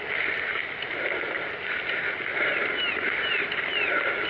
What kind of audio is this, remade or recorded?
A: recorded